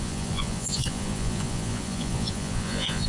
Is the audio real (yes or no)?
no